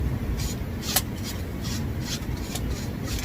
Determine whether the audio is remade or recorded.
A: recorded